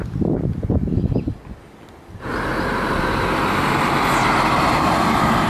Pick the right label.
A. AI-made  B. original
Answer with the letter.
B